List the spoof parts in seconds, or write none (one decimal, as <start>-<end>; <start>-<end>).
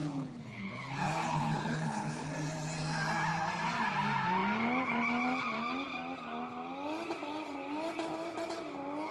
0.0-2.3